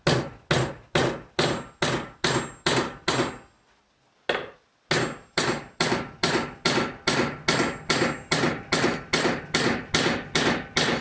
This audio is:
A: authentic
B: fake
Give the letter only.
A